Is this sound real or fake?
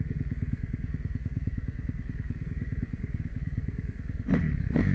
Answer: fake